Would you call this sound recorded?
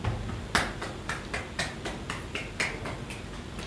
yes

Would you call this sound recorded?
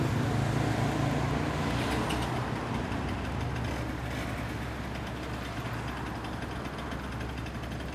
yes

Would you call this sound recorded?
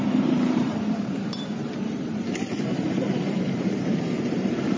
no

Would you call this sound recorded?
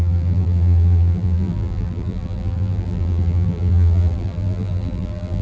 no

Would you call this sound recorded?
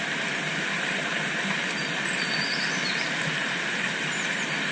yes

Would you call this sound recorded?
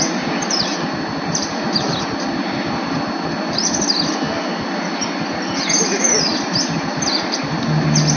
yes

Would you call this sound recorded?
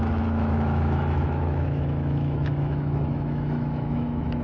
no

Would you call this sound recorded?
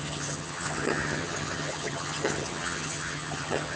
no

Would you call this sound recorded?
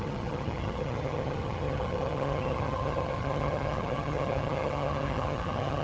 no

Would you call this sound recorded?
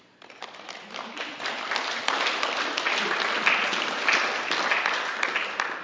yes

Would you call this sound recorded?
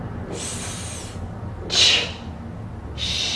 yes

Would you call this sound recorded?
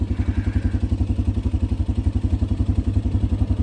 yes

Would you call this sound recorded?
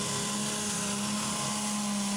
yes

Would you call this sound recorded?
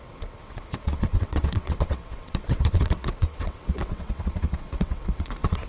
no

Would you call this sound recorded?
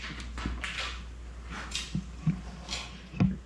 yes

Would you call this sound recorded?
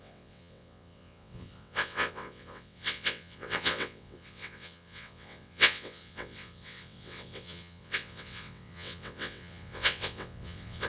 no